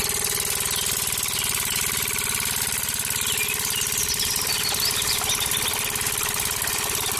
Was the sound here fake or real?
real